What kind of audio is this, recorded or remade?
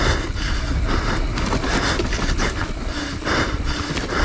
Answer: recorded